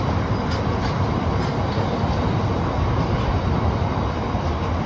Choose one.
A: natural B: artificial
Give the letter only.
A